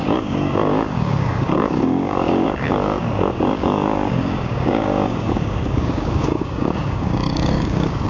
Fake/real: fake